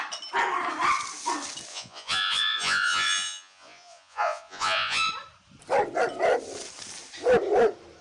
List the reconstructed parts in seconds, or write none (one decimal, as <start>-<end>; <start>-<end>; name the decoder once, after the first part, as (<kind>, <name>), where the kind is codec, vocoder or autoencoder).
1.7-5.1 (vocoder, Vocos)